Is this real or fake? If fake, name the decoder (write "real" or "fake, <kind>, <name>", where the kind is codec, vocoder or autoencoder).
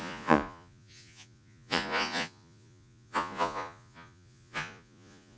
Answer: fake, vocoder, Vocos